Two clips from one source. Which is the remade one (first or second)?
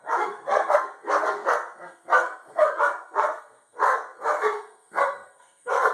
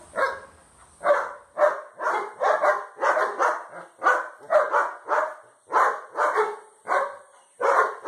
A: first